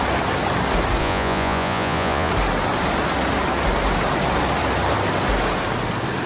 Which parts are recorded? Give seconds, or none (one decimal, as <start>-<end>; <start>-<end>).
0.0-1.0; 2.3-6.3